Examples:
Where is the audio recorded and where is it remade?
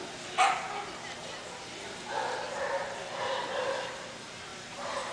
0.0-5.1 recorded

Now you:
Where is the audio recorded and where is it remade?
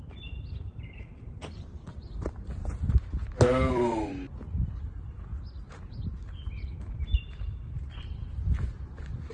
0.0-2.6 remade; 2.6-3.7 recorded; 3.7-5.3 remade; 5.3-6.5 recorded; 6.5-9.3 remade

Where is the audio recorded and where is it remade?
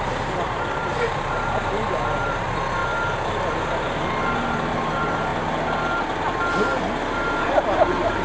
0.0-2.8 remade; 2.8-4.0 recorded; 4.0-5.3 remade; 5.3-7.4 recorded; 7.4-8.2 remade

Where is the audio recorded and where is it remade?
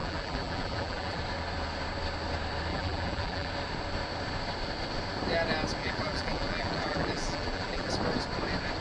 0.0-1.2 remade; 1.2-2.7 recorded; 2.7-3.5 remade; 3.5-5.8 recorded; 5.8-7.9 remade; 7.9-8.8 recorded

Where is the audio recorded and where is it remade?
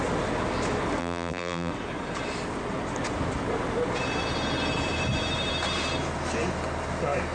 0.0-1.0 recorded; 1.0-1.7 remade; 1.7-7.3 recorded